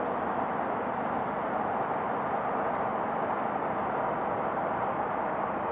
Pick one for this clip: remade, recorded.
recorded